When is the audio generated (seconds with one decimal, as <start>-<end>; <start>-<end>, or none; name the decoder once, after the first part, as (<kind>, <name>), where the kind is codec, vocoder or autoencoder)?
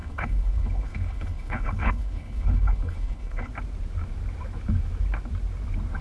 0.0-3.5 (codec, HILCodec)